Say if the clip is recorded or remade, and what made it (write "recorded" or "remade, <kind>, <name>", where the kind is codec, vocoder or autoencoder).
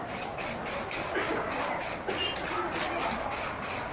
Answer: recorded